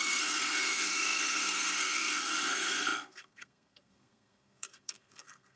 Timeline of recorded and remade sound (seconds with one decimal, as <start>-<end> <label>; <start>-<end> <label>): 0.0-5.6 remade